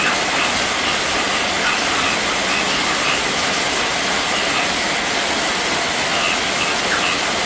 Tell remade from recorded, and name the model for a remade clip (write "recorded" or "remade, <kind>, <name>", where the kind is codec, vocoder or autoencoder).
recorded